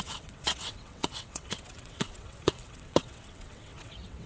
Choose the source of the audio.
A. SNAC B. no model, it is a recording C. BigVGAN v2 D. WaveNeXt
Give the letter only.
D